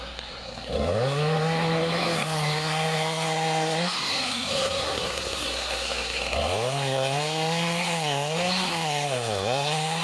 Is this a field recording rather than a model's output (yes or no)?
no